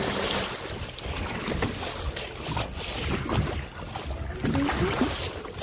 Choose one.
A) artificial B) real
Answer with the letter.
B